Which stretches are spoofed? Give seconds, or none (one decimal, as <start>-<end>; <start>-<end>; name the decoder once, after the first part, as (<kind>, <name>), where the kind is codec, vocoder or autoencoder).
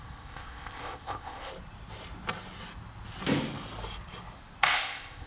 0.0-1.5 (codec, ZipCodec); 4.7-5.3